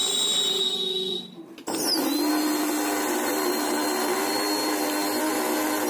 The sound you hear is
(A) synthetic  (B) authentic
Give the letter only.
B